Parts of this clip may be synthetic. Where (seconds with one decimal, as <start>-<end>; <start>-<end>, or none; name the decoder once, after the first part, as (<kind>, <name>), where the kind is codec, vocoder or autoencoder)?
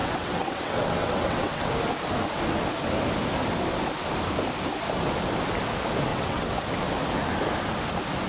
0.0-1.7 (vocoder, WaveNeXt); 6.1-6.6